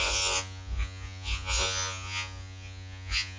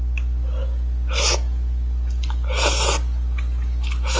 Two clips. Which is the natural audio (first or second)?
second